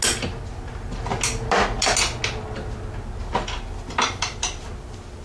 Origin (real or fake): real